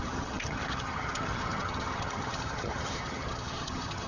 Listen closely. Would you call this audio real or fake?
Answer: fake